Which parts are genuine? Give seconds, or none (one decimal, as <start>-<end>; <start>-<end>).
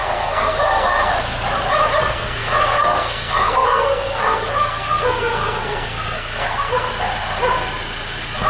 1.1-2.0; 6.9-8.5